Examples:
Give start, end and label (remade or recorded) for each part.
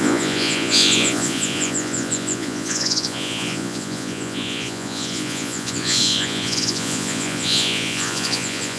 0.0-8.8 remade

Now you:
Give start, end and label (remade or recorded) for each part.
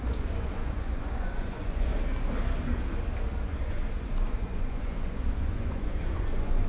0.0-1.9 remade; 1.9-3.2 recorded; 3.2-6.7 remade